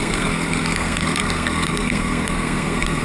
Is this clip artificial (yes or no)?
yes